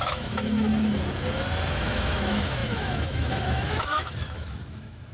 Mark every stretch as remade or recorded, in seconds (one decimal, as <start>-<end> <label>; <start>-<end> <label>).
0.0-0.7 remade; 0.7-1.7 recorded; 1.7-5.1 remade